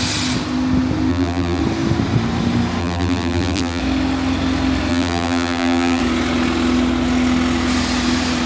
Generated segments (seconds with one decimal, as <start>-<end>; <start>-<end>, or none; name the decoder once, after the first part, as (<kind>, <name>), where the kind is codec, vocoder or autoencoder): 1.1-1.6 (vocoder, BigVGAN v2); 2.8-3.8; 4.9-6.0